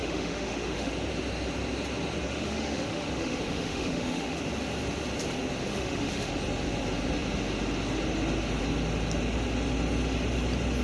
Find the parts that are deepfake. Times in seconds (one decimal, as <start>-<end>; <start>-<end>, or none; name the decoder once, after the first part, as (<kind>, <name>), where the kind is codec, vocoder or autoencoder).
0.0-0.9 (autoencoder, DAC-VAE); 2.3-4.4; 5.7-6.3